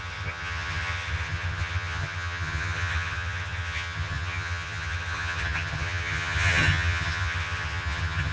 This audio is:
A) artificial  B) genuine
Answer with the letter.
A